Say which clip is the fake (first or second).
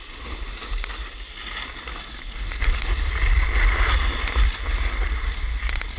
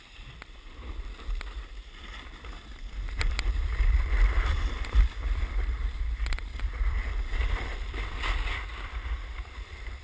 second